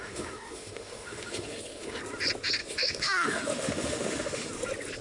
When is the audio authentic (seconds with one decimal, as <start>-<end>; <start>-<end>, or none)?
2.0-2.6; 4.5-5.0